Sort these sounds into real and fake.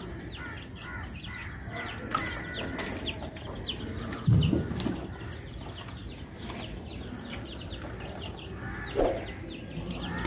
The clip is real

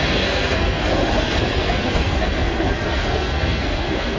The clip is fake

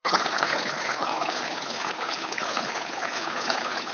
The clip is fake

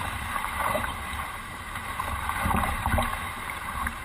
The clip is fake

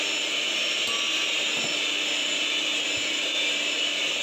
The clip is real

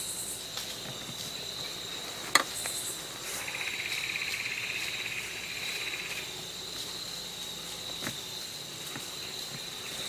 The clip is real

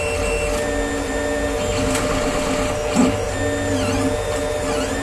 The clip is real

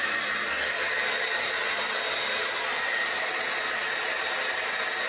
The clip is real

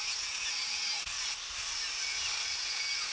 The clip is real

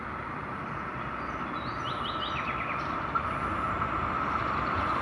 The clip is fake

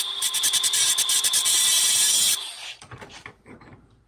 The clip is fake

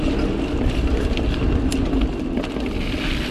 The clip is real